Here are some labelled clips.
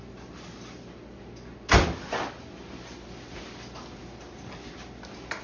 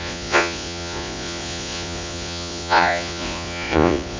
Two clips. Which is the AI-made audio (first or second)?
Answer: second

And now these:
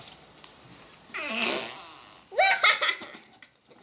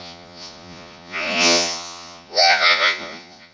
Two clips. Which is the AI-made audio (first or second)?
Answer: second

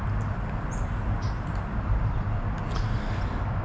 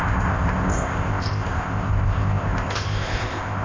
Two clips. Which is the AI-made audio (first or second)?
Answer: second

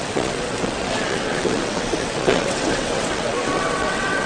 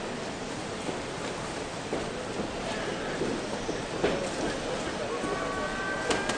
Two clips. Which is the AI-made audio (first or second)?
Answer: first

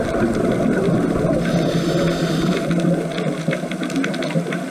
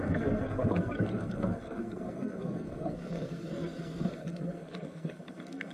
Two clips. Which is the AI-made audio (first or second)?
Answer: second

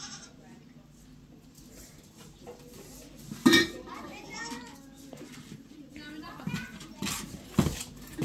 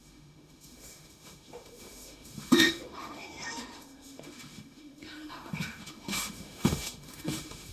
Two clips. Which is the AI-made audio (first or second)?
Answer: second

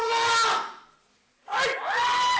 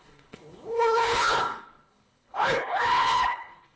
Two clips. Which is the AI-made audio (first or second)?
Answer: second